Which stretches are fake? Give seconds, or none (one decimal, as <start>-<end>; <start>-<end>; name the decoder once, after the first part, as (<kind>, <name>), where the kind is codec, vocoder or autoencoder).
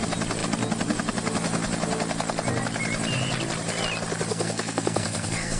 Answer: 4.3-5.6 (codec, SNAC)